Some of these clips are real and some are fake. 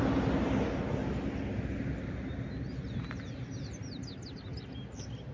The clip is real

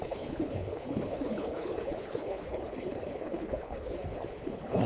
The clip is fake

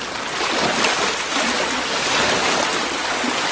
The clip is real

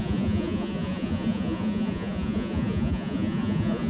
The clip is fake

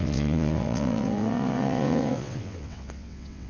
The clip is fake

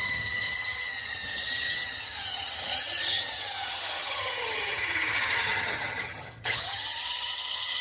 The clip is fake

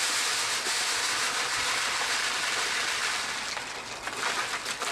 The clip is real